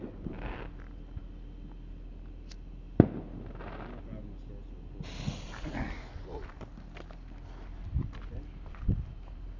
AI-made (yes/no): no